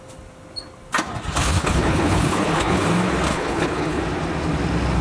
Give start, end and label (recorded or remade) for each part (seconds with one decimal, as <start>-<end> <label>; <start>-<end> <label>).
0.0-1.4 recorded; 1.4-2.8 remade; 2.8-3.3 recorded; 3.3-4.0 remade; 4.0-5.0 recorded